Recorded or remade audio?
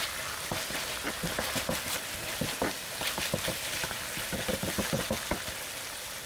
recorded